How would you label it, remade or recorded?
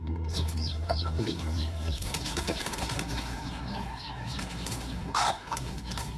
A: remade